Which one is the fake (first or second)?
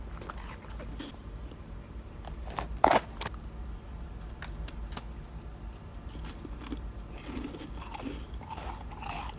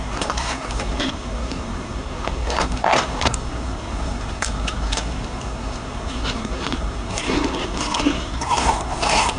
second